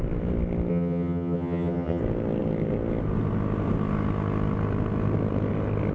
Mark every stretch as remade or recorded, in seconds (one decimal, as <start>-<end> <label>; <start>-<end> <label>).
0.0-0.7 recorded; 0.7-2.0 remade; 2.0-5.9 recorded